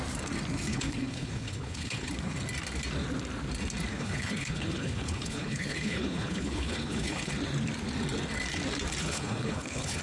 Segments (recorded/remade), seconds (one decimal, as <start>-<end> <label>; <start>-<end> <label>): 0.0-0.7 recorded; 0.7-2.1 remade; 2.1-3.9 recorded; 3.9-7.3 remade; 7.3-9.0 recorded; 9.0-10.0 remade